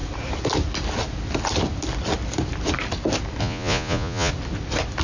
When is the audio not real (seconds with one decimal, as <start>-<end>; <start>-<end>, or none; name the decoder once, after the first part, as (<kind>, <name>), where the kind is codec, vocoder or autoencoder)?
3.4-4.3 (vocoder, Vocos)